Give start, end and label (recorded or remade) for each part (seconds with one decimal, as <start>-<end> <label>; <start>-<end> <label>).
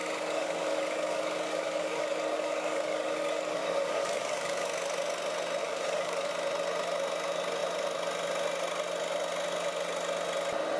0.0-4.7 remade; 4.7-5.6 recorded; 5.6-6.3 remade; 6.3-10.8 recorded